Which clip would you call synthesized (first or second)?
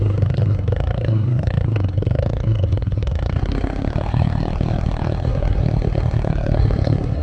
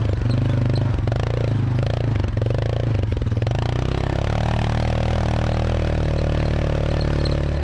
first